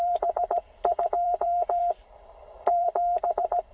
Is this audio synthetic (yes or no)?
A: yes